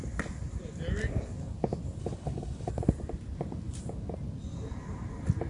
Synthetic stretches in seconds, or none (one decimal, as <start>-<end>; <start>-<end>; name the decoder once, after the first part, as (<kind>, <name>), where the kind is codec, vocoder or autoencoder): 2.0-2.7 (codec, HILCodec)